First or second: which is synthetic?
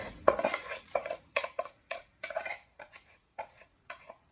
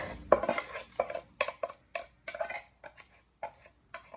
first